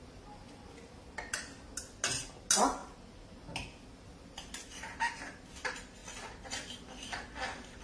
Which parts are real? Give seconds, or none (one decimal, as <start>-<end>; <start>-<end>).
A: 0.0-7.8